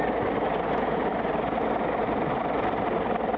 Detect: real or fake real